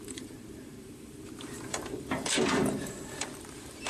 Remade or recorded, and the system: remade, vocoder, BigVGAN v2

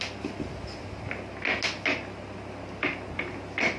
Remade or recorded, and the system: recorded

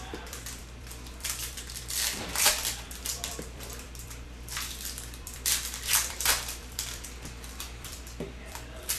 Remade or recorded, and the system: remade, vocoder, BigVGAN v2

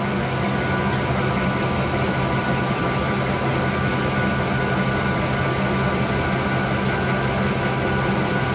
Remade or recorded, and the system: recorded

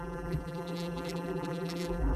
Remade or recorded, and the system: remade, vocoder, BigVGAN v2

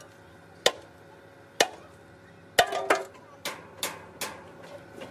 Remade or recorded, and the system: recorded